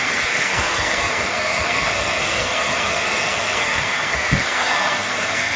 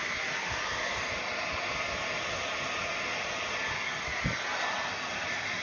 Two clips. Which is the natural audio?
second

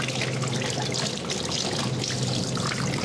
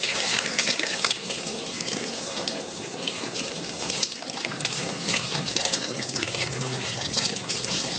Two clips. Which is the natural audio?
first